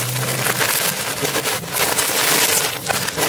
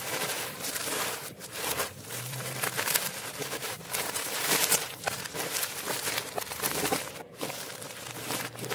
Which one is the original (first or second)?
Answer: first